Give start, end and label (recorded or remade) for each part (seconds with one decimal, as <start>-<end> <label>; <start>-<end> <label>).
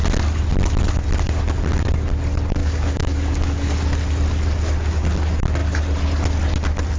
0.0-2.6 recorded; 2.6-3.7 remade; 3.7-7.0 recorded